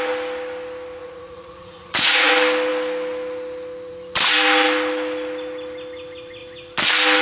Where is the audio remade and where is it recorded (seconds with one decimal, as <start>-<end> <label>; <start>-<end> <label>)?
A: 0.0-1.0 recorded; 1.0-2.3 remade; 2.3-7.2 recorded